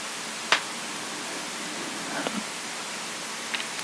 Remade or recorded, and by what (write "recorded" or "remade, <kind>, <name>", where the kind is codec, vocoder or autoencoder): recorded